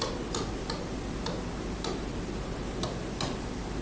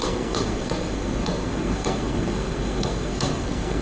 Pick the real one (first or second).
first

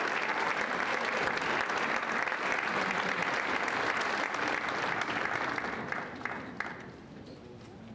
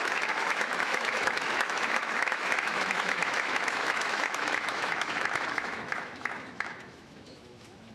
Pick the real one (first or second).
first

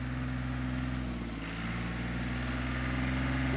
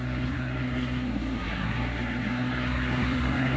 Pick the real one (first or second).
first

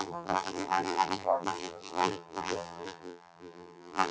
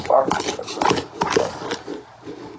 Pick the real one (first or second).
second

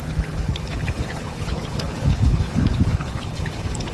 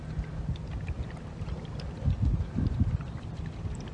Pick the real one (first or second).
second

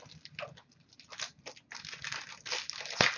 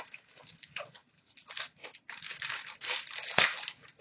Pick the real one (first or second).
first